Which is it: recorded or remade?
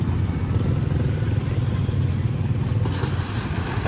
recorded